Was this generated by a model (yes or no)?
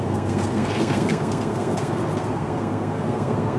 yes